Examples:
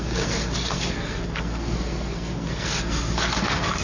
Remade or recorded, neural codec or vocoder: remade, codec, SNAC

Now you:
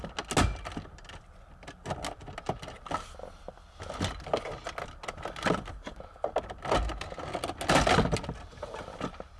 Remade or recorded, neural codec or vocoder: recorded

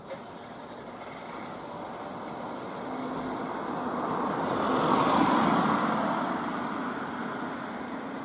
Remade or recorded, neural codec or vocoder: recorded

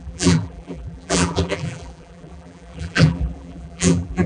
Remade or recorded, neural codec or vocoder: remade, vocoder, BigVGAN v2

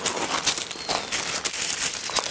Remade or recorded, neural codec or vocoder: recorded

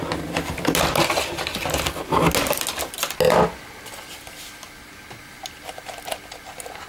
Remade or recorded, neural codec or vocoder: recorded